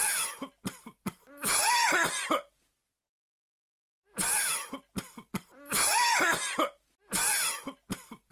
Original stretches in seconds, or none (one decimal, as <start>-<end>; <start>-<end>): 0.0-8.3

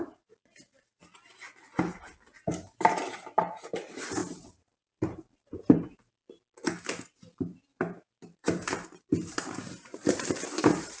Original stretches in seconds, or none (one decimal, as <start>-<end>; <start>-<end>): 1.0-2.4; 6.2-7.2

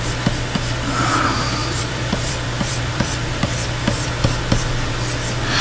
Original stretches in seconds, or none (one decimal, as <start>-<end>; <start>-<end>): 0.0-1.6; 4.4-5.6

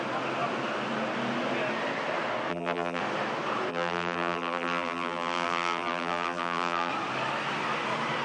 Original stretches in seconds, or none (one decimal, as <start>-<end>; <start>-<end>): 0.0-2.5; 3.0-3.7; 6.9-8.2

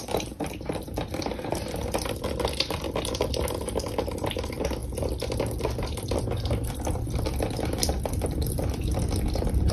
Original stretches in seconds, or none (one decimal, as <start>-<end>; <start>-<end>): none

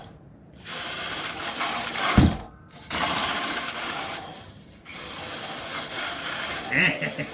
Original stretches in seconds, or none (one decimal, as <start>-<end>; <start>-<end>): 4.9-5.9